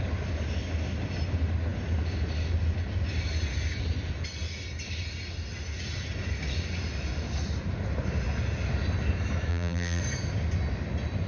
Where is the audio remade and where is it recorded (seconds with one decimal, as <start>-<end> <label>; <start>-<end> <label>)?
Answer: 0.0-9.5 recorded; 9.5-10.0 remade; 10.0-11.3 recorded